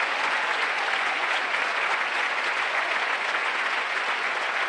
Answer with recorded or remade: remade